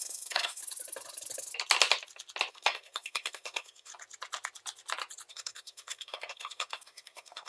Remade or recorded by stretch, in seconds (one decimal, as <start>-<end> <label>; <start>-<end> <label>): 0.0-0.6 remade; 0.6-2.5 recorded; 2.5-3.9 remade; 3.9-5.3 recorded; 5.3-7.5 remade